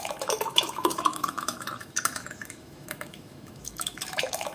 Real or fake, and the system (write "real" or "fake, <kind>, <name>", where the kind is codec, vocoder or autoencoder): fake, autoencoder, DAC-VAE